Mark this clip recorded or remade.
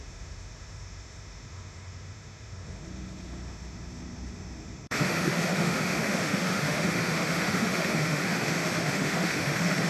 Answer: remade